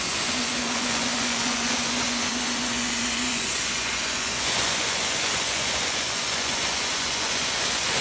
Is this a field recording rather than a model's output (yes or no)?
no